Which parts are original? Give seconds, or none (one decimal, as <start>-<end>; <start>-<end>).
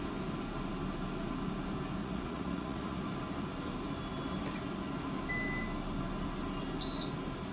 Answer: 0.0-2.0; 3.0-7.5